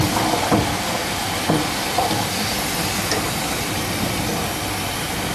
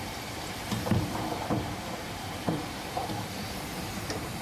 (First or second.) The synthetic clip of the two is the second